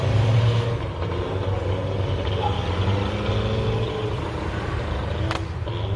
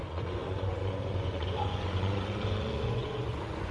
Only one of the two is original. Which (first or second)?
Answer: first